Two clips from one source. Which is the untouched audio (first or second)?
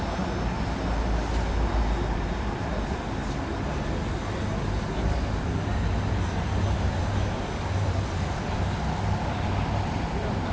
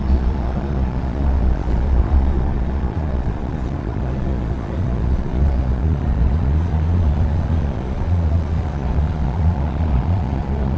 first